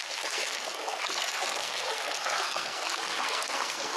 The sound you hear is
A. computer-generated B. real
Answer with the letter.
A